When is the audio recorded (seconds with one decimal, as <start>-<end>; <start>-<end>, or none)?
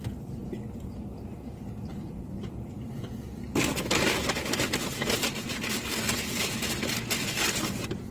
0.0-1.9; 3.0-8.1